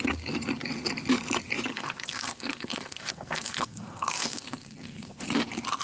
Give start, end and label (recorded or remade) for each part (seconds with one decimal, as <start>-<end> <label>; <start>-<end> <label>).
0.0-1.7 recorded; 1.7-5.2 remade; 5.2-5.8 recorded